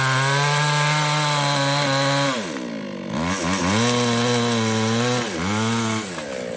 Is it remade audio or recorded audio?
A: recorded